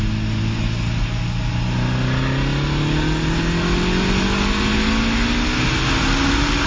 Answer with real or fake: real